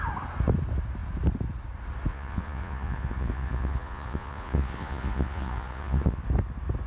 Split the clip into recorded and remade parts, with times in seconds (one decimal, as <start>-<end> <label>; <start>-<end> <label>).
0.0-2.1 recorded; 2.1-6.2 remade; 6.2-6.9 recorded